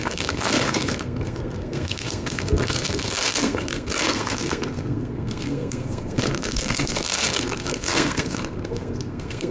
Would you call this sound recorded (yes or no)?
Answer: no